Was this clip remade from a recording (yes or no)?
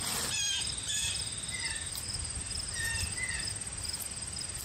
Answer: no